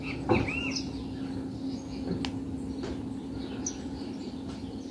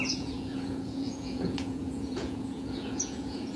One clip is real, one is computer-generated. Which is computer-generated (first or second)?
second